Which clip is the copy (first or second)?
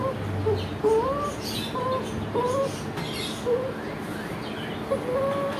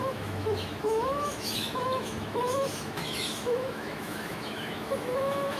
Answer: second